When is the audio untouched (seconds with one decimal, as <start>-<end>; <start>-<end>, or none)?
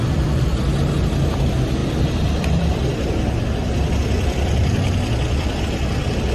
0.0-6.3